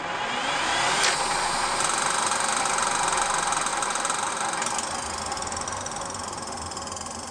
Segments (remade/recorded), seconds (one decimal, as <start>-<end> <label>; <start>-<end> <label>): 0.0-7.3 recorded